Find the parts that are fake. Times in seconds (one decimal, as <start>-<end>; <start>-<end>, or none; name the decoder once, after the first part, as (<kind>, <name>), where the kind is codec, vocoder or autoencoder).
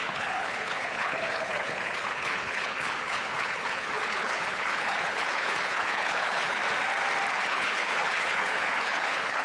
0.0-6.6 (codec, HILCodec); 7.3-9.4